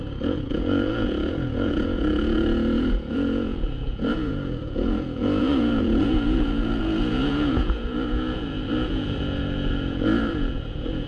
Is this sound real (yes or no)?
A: no